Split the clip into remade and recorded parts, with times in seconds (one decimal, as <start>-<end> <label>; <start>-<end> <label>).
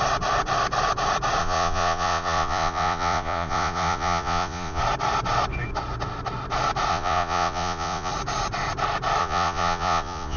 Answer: 0.0-1.4 recorded; 1.4-4.8 remade; 4.8-6.9 recorded; 6.9-8.1 remade; 8.1-9.2 recorded; 9.2-10.4 remade